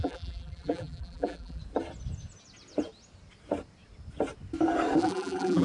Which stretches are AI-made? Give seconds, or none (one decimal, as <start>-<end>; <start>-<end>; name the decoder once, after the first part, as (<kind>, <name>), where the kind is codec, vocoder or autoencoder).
0.0-1.6 (vocoder, BigVGAN v2); 5.0-5.6